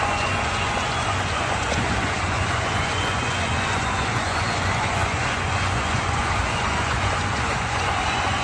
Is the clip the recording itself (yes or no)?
no